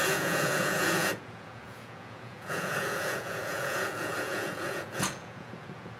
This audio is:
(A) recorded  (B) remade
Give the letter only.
B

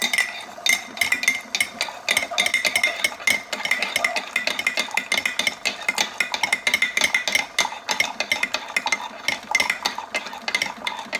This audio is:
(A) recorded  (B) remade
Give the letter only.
A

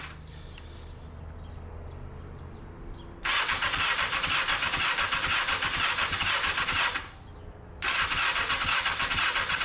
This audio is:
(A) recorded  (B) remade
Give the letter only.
A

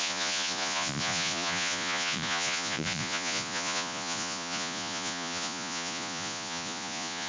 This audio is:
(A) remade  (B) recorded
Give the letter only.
A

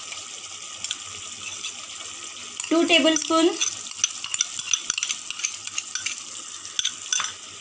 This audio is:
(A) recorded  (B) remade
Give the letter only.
A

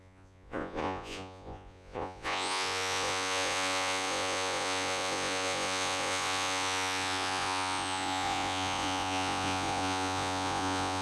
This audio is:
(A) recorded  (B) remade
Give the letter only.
B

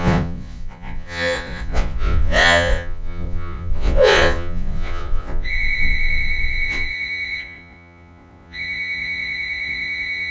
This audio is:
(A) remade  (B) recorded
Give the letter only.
A